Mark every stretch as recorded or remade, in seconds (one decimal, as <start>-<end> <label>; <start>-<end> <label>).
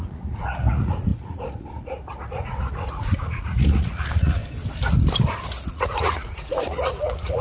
0.0-4.4 remade; 4.4-5.7 recorded; 5.7-7.4 remade